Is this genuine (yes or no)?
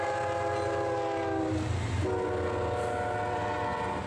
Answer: yes